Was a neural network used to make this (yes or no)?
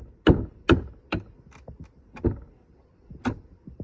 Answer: no